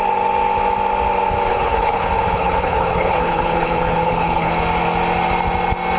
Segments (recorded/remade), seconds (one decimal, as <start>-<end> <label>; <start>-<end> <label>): 0.0-1.5 recorded; 1.5-4.5 remade; 4.5-6.0 recorded